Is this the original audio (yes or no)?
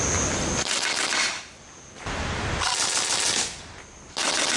yes